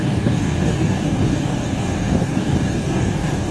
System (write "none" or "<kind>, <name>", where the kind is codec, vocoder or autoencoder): codec, DAC